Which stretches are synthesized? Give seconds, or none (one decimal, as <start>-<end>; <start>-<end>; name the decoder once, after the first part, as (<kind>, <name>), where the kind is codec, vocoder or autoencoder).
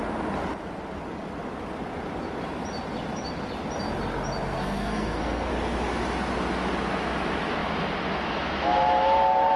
4.5-5.5 (codec, SNAC)